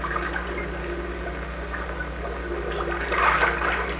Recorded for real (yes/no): yes